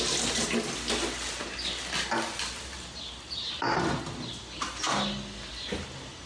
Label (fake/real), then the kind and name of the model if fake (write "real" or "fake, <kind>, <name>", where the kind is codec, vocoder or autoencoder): real